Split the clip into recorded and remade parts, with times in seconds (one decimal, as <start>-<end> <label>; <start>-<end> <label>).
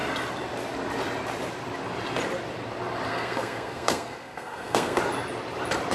0.0-3.1 recorded; 3.1-5.0 remade; 5.0-5.9 recorded